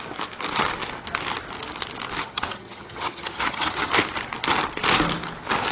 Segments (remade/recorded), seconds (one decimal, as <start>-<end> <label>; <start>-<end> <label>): 0.0-2.2 recorded; 2.2-3.9 remade; 3.9-5.7 recorded